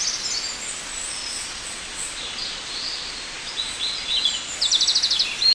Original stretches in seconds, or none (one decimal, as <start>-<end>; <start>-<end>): 0.0-1.2; 4.5-5.5